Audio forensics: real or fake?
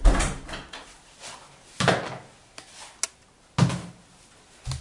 real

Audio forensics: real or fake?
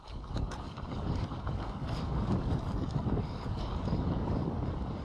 fake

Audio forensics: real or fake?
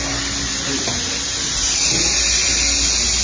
real